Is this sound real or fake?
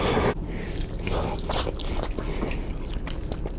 real